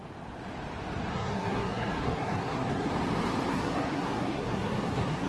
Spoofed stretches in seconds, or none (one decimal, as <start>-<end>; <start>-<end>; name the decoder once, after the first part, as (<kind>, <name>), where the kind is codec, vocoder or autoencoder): 1.1-2.9 (codec, SNAC); 3.5-5.3